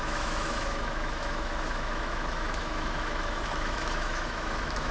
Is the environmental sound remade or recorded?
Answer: remade